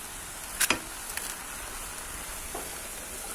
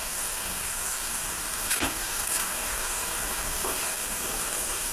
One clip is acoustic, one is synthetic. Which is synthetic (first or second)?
second